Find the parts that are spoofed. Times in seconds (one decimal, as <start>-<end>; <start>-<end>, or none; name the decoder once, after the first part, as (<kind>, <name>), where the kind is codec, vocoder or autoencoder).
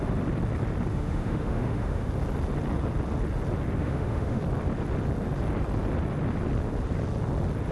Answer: 0.9-2.1 (autoencoder, DAC-VAE); 3.8-4.4